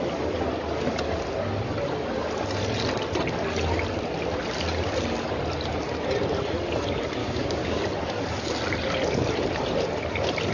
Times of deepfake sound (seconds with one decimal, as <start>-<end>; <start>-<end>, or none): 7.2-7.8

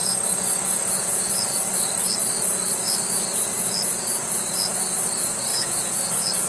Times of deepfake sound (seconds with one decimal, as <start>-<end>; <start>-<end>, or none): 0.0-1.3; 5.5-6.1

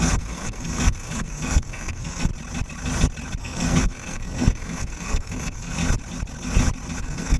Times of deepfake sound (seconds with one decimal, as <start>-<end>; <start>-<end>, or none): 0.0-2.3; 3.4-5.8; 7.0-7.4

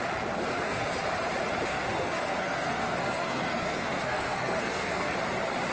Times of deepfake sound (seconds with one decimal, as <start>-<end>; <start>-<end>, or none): 0.5-1.0; 1.7-5.1

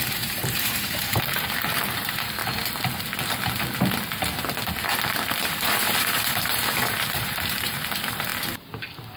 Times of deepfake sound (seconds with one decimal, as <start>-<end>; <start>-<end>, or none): 0.0-2.4; 5.3-8.3

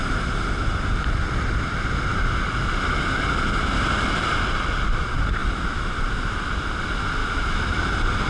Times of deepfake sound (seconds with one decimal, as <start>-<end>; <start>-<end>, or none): 7.2-7.8